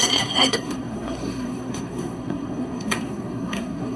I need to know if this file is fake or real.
fake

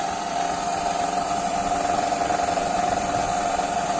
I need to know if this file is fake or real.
fake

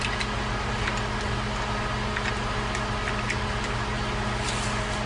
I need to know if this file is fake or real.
real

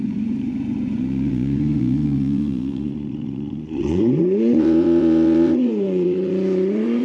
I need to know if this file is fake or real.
fake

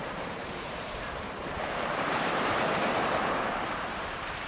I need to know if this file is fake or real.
fake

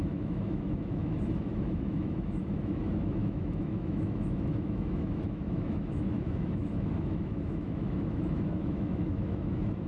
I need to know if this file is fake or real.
fake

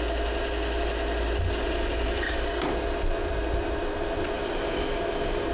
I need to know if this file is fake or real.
real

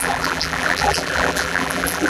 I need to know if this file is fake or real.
fake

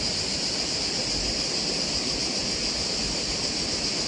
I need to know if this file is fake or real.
real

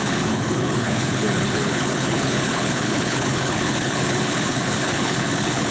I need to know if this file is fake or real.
fake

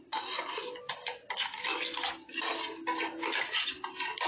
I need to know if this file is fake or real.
real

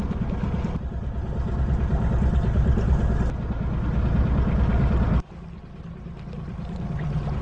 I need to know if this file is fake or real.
real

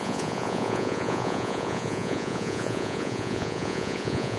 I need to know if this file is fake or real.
fake